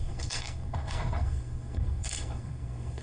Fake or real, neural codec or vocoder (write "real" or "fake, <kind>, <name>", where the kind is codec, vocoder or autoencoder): fake, codec, SNAC